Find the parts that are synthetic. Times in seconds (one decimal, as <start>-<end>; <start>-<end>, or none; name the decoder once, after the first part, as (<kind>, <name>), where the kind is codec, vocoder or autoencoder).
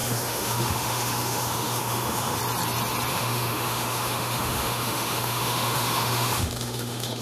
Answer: 0.0-2.4 (autoencoder, DAC-VAE); 3.1-7.2